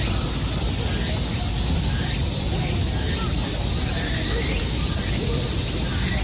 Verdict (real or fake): real